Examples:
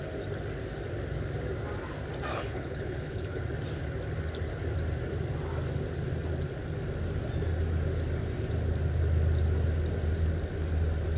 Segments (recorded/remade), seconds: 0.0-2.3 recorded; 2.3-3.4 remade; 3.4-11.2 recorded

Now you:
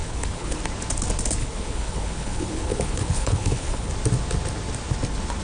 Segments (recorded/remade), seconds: 0.0-0.6 remade; 0.6-1.4 recorded; 1.4-3.9 remade; 3.9-5.4 recorded

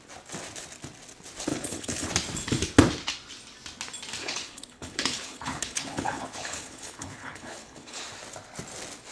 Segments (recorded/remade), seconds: 0.0-1.5 recorded; 1.5-2.1 remade; 2.1-4.2 recorded; 4.2-8.0 remade; 8.0-9.1 recorded

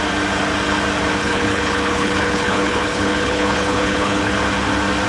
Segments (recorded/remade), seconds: 0.0-1.2 recorded; 1.2-4.3 remade; 4.3-5.1 recorded

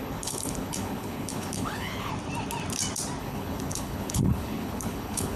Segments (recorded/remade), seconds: 0.0-2.1 remade; 2.1-3.2 recorded; 3.2-5.4 remade

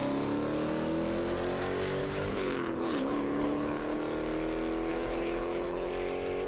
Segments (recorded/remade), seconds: 0.0-2.0 recorded; 2.0-4.0 remade; 4.0-4.9 recorded; 4.9-5.9 remade; 5.9-6.5 recorded